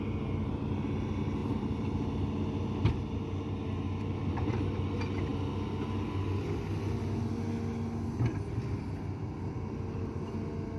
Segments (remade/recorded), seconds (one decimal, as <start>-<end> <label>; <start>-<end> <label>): 0.0-1.4 recorded; 1.4-2.1 remade; 2.1-10.8 recorded